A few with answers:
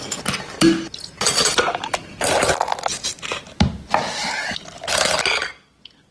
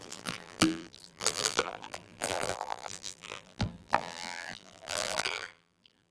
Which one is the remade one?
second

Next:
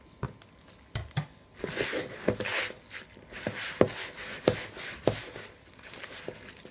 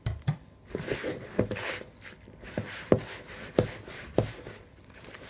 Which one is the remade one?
second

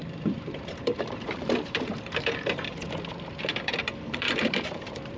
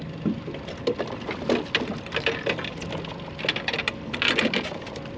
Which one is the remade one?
first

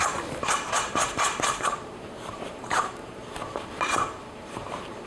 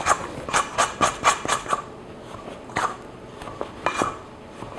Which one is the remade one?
first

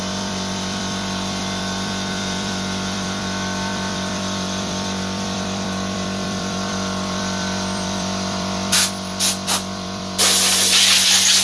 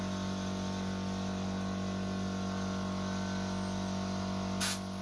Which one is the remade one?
first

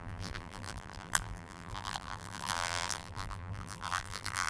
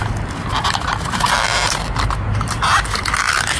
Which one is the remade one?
first